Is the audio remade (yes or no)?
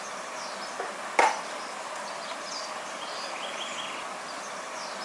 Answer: no